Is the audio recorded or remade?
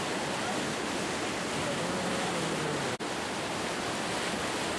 recorded